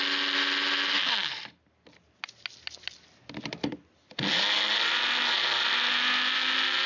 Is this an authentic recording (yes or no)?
yes